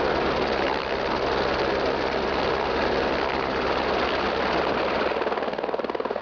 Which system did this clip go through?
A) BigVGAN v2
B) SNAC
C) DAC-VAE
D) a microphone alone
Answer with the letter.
D